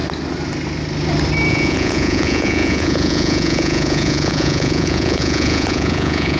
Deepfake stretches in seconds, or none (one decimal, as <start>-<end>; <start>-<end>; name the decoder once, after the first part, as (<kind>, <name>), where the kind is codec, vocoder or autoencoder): 1.5-6.4 (vocoder, Vocos)